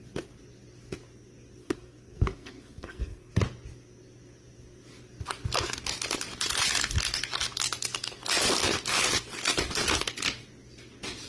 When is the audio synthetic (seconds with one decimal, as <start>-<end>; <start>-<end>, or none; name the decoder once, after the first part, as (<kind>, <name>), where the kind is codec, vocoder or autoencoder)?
1.6-3.3 (codec, SNAC)